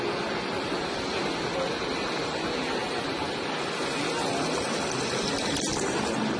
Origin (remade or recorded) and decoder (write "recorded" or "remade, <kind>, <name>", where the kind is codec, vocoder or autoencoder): recorded